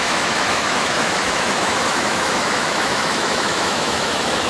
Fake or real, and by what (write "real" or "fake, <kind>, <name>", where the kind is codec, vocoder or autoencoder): fake, autoencoder, DAC-VAE